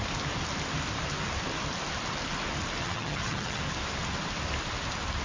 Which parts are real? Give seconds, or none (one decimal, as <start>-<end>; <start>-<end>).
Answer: 0.0-2.8; 3.6-5.2